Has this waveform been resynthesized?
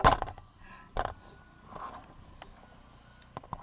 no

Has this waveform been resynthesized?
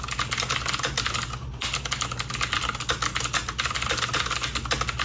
no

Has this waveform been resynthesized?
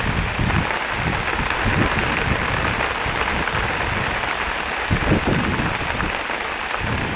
no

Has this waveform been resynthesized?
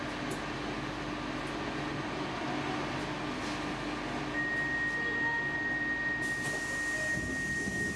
no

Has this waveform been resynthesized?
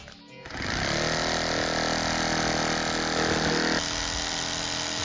no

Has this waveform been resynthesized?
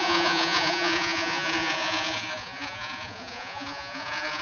yes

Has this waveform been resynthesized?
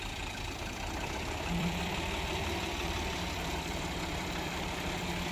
yes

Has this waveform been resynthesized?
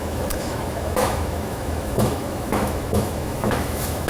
yes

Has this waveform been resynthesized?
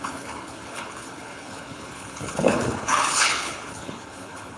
yes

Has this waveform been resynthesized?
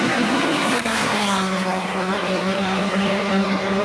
yes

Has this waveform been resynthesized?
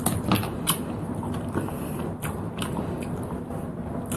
no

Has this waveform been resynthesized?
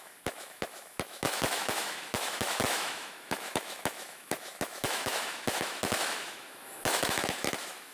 yes